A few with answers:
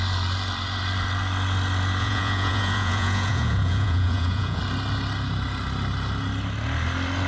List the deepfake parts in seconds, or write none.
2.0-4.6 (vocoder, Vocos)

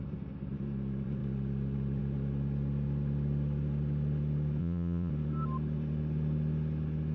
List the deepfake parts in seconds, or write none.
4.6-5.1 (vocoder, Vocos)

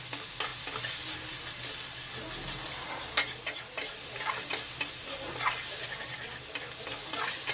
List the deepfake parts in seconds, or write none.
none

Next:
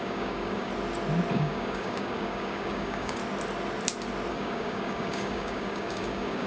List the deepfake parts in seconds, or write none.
0.0-0.7 (codec, DAC); 1.3-3.2; 4.3-6.5